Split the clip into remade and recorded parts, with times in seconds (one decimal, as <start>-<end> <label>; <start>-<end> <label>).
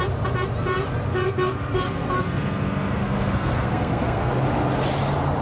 0.0-1.1 recorded; 1.1-4.3 remade; 4.3-5.4 recorded